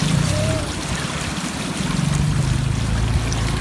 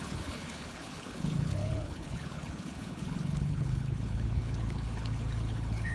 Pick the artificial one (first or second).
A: second